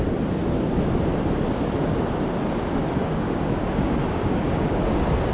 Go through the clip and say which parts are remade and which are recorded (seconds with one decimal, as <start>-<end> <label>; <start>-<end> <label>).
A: 0.0-3.0 recorded; 3.0-4.8 remade; 4.8-5.3 recorded